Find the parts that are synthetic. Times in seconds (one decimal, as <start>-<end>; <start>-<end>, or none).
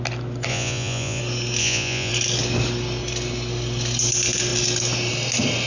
0.5-1.2; 1.6-2.1